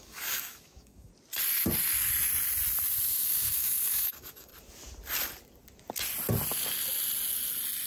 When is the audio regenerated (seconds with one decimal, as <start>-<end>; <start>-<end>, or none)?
0.0-1.1; 3.1-4.5